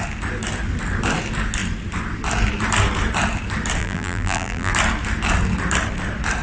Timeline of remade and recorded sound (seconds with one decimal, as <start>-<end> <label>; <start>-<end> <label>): 0.0-3.8 recorded; 3.8-4.7 remade; 4.7-6.4 recorded